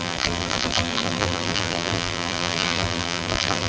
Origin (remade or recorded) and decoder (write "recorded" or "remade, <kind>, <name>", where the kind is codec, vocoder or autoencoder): remade, vocoder, BigVGAN v2